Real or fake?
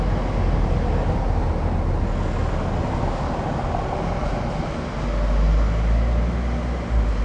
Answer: real